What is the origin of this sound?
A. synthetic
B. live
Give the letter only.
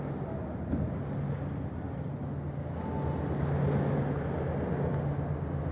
B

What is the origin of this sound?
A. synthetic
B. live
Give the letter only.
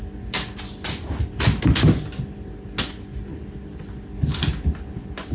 B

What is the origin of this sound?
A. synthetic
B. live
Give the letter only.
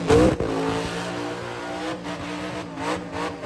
B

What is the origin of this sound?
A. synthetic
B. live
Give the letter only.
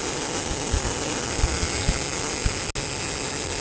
B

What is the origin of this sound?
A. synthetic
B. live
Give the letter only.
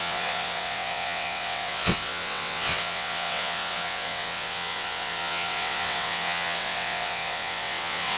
A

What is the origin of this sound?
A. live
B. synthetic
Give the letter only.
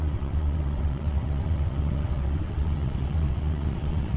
B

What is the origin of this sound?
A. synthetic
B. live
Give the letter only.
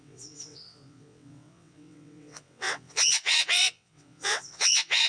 A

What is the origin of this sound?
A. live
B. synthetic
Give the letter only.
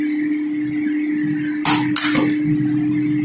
A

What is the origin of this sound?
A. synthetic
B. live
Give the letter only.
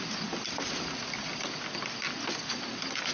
B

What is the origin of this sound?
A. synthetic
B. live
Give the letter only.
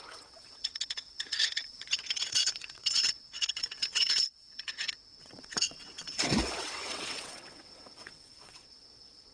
A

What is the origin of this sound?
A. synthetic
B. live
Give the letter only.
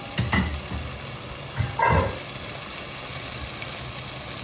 B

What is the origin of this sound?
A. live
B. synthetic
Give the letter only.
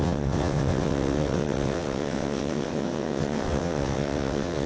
B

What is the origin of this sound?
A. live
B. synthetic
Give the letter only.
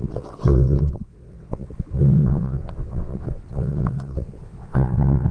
B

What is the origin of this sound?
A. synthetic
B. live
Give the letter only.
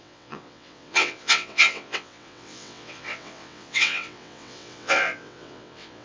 A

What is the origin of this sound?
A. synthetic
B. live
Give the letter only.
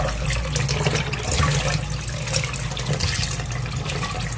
B